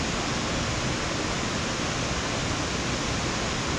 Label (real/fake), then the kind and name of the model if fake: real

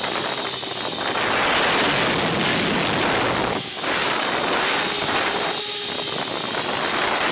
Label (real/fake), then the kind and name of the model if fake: real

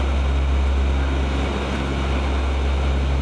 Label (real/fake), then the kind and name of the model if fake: real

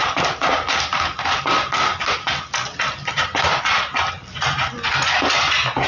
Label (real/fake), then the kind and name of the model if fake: real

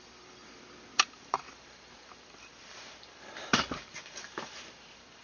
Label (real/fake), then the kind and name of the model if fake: fake, vocoder, BigVGAN v2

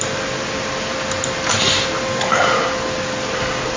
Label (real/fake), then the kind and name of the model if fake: real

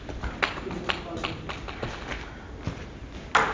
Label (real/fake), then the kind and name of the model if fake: real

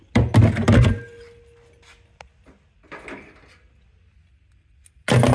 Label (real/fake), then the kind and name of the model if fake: real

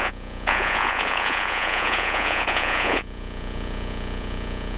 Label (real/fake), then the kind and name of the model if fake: fake, vocoder, Vocos